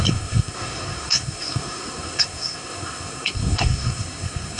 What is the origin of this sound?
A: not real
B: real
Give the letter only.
A